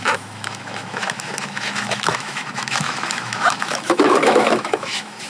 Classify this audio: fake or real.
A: fake